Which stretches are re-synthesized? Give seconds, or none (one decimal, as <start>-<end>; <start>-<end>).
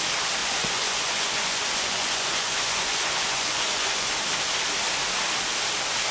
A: 0.4-4.1